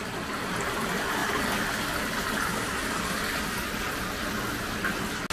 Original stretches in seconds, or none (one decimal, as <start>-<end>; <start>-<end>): 0.0-5.3